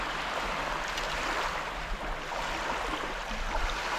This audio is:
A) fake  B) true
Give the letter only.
B